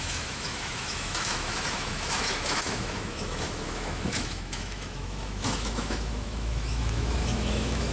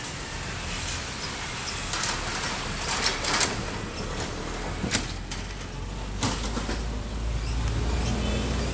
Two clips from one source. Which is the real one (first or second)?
second